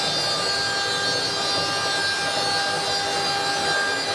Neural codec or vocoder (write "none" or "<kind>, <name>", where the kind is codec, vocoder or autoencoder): none